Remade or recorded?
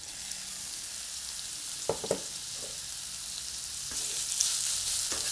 recorded